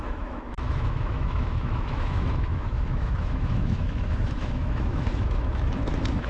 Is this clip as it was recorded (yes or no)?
no